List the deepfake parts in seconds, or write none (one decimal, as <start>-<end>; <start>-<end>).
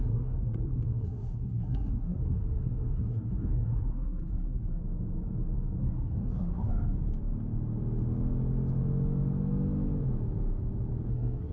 0.0-4.8; 5.8-6.7; 11.1-11.5